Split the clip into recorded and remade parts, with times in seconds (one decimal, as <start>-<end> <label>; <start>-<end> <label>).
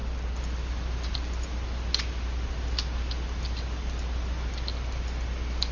0.0-5.7 recorded